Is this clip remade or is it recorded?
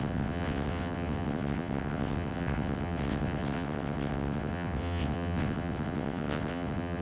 remade